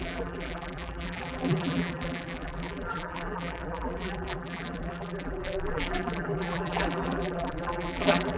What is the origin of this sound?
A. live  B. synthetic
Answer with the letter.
B